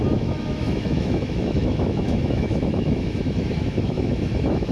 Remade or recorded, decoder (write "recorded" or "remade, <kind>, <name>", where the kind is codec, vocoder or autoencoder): remade, autoencoder, DAC-VAE